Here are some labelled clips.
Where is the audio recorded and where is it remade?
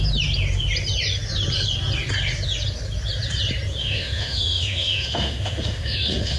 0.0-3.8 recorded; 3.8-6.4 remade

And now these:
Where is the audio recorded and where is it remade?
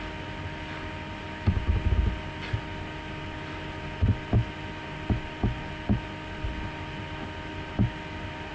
0.0-8.5 recorded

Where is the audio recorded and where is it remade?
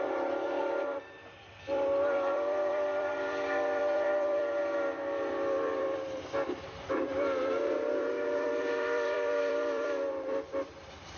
0.0-11.2 remade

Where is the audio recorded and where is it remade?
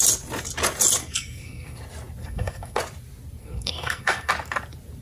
0.0-1.0 recorded; 1.0-1.8 remade; 1.8-2.2 recorded; 2.2-2.8 remade; 2.8-3.4 recorded; 3.4-4.3 remade; 4.3-5.0 recorded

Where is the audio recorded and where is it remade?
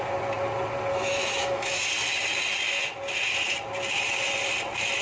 0.0-0.9 recorded; 0.9-1.8 remade; 1.8-5.0 recorded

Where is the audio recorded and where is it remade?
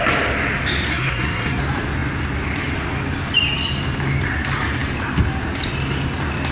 0.0-0.9 recorded; 0.9-1.6 remade; 1.6-6.5 recorded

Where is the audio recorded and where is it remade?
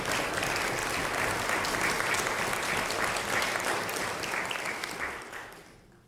0.0-6.1 recorded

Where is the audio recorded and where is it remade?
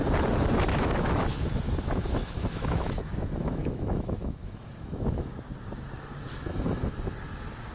0.0-0.7 recorded; 0.7-5.3 remade; 5.3-6.3 recorded; 6.3-6.9 remade; 6.9-7.7 recorded